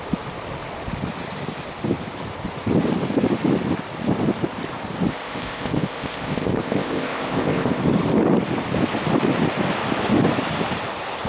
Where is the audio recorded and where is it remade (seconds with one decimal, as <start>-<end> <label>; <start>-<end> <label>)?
0.0-5.1 recorded; 5.1-7.8 remade; 7.8-11.3 recorded